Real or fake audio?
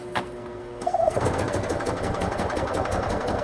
fake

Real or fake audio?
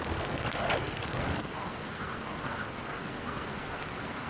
fake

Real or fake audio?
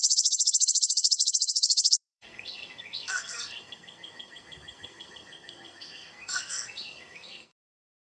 fake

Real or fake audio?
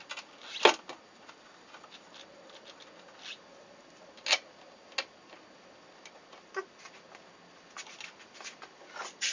real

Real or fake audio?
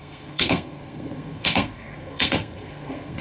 fake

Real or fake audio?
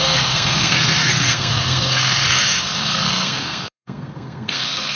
fake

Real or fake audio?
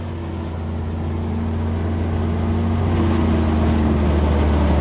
real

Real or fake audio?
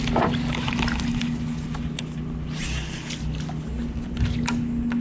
real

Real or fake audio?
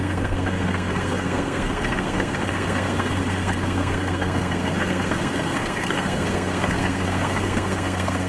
fake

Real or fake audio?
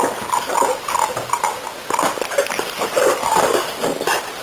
real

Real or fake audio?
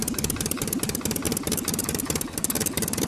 real